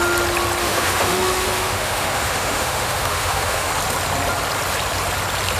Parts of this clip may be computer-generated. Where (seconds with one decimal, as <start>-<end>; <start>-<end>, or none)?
0.6-3.7